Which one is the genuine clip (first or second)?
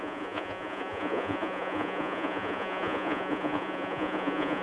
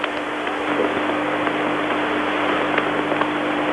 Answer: second